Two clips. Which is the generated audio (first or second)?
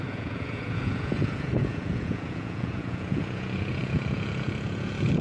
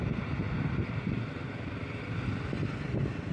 first